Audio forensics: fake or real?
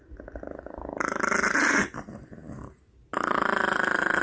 real